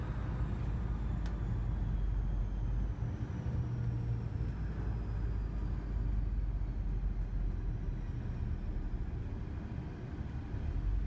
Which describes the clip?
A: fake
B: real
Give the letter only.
B